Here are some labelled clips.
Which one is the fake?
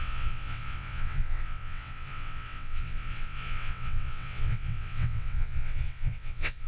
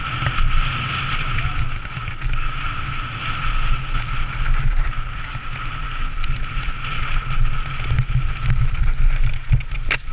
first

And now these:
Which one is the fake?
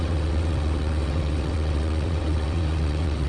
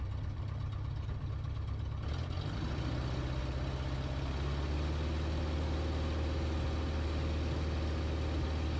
first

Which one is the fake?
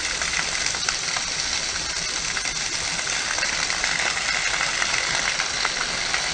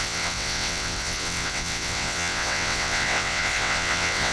second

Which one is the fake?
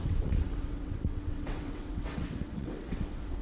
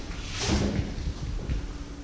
first